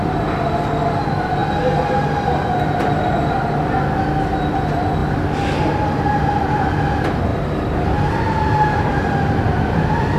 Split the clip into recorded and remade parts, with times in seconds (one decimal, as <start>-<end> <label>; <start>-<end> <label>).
0.0-1.4 recorded; 1.4-4.4 remade; 4.4-5.0 recorded; 5.0-6.6 remade; 6.6-7.3 recorded; 7.3-8.2 remade; 8.2-10.2 recorded